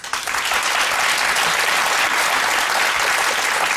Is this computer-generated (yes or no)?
no